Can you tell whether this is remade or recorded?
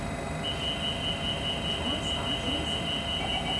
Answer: recorded